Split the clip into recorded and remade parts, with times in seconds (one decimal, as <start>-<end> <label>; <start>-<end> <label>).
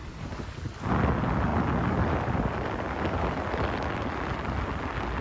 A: 0.0-5.2 recorded